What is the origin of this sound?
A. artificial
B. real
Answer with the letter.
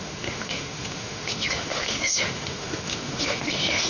A